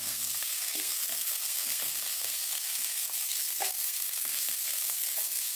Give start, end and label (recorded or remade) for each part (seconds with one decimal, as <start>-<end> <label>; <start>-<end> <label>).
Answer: 0.0-5.6 remade